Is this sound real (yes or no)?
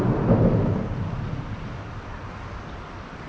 yes